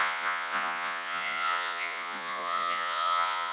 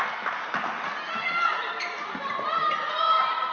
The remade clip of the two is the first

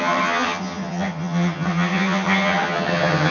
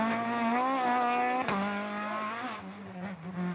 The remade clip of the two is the first